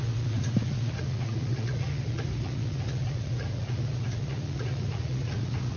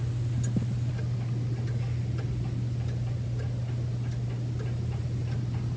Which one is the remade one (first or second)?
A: first